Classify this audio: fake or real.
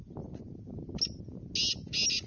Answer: real